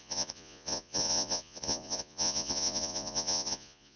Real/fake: fake